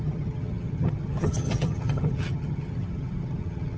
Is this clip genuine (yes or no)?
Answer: no